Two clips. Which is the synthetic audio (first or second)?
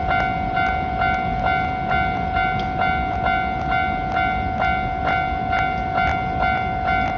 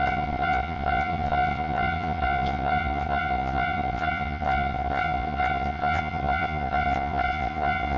second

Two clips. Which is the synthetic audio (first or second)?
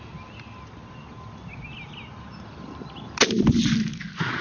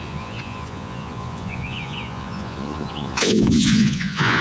second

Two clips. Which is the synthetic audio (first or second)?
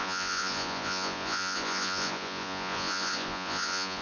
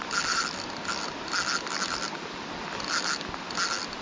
first